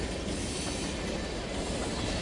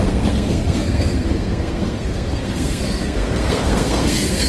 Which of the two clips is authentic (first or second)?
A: first